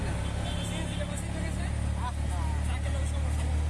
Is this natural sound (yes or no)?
yes